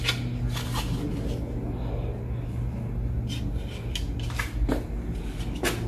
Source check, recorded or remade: recorded